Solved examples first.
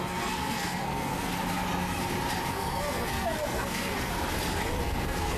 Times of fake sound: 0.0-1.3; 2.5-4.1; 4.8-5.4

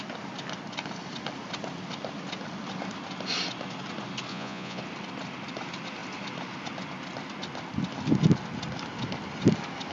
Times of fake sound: 4.3-4.8

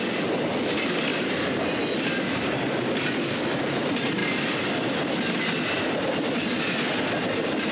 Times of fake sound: none

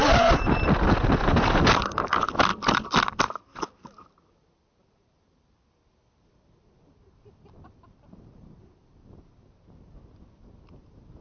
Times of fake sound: none